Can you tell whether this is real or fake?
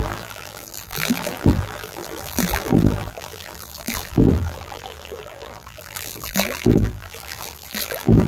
fake